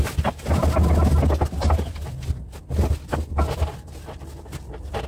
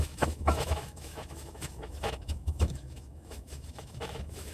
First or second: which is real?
first